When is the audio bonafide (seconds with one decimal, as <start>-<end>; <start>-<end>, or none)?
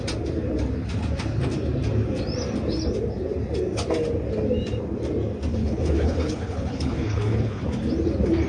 0.0-5.5; 7.6-8.5